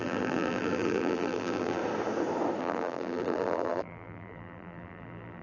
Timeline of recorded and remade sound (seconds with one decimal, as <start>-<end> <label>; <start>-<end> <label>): 0.0-1.8 remade; 1.8-2.6 recorded; 2.6-5.4 remade